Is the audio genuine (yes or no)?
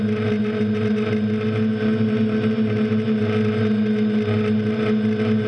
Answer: yes